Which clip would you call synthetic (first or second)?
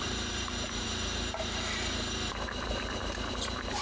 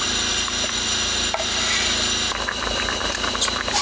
first